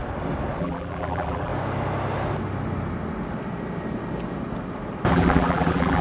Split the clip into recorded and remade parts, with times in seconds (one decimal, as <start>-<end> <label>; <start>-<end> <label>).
0.0-0.6 recorded; 0.6-1.5 remade; 1.5-5.1 recorded; 5.1-6.0 remade